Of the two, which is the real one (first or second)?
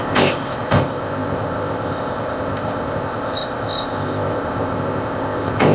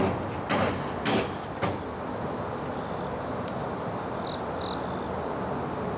second